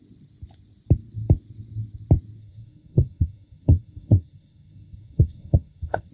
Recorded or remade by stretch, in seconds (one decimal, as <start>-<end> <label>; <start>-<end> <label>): 0.0-2.4 recorded; 2.4-6.1 remade